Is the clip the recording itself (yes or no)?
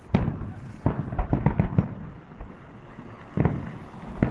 yes